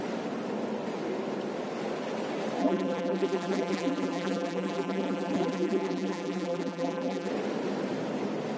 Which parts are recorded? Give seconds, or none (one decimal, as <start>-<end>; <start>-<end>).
0.0-2.6; 7.3-8.6

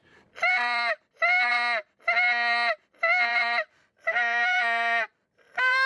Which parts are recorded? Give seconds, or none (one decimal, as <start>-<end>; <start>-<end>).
1.0-3.3

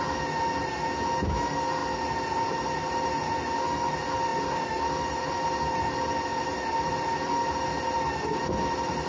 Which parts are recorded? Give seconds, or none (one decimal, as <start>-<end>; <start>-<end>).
0.0-6.3; 7.3-9.1

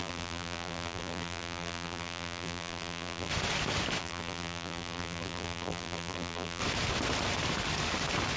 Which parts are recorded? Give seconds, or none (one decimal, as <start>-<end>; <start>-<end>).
3.3-4.0; 6.6-8.4

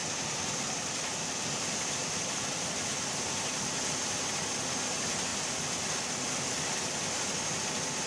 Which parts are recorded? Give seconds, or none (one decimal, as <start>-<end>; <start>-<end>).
3.6-5.3; 6.7-8.1

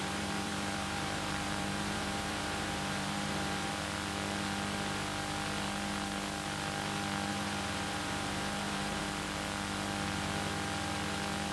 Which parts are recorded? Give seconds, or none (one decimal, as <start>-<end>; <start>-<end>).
3.7-7.3; 9.0-11.5

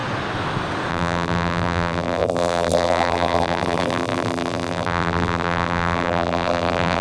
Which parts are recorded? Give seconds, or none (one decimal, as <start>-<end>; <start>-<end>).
0.0-0.9

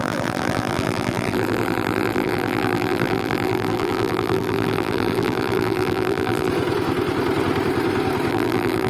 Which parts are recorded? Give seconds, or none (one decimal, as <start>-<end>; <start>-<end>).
6.5-8.3